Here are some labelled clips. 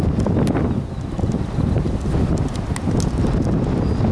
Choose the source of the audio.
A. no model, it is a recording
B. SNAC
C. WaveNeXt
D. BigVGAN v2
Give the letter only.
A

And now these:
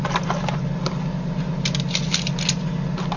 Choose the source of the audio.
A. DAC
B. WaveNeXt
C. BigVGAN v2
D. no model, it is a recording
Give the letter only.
D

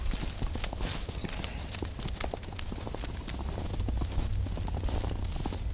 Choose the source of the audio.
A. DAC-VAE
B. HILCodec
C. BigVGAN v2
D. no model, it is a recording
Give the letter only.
D